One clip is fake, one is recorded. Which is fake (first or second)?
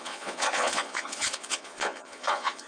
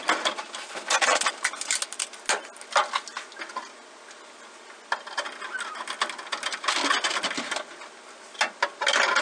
first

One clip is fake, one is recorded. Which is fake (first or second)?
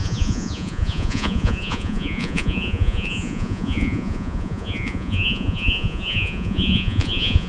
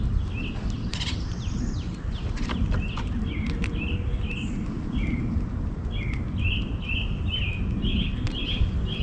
first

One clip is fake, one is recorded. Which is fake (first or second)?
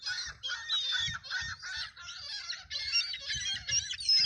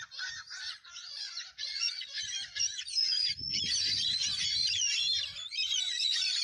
second